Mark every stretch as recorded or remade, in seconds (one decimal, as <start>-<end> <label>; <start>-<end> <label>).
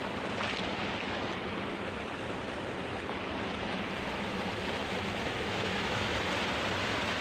0.0-4.8 recorded; 4.8-6.2 remade; 6.2-7.2 recorded